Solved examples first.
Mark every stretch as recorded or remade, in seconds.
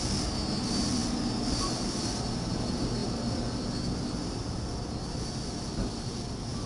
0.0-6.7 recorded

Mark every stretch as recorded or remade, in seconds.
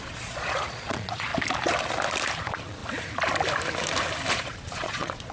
0.0-1.3 remade; 1.3-2.4 recorded; 2.4-2.8 remade; 2.8-4.3 recorded; 4.3-5.3 remade